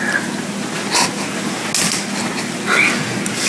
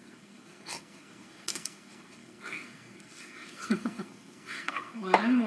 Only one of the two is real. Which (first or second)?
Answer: first